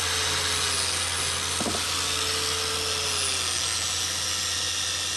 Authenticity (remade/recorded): recorded